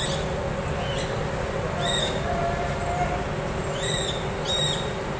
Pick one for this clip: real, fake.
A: real